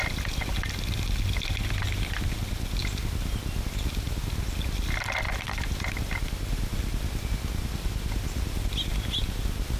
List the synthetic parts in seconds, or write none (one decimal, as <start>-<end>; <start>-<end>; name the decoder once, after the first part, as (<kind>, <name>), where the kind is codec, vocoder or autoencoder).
none